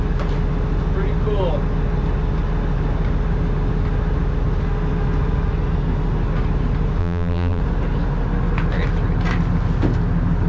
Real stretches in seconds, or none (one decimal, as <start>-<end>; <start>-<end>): 0.0-7.0; 7.6-10.5